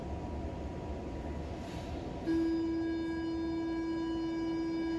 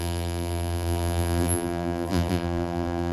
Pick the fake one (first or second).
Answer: second